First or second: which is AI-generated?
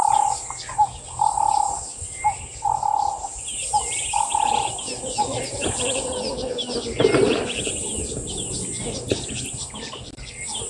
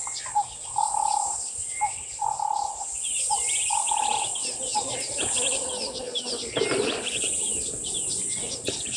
second